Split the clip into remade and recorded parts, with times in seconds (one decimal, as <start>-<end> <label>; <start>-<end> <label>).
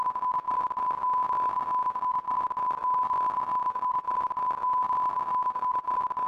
0.0-6.3 recorded